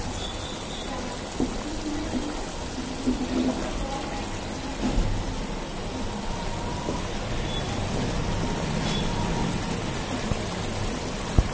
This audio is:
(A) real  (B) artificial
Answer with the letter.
A